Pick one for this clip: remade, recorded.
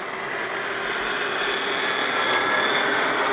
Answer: recorded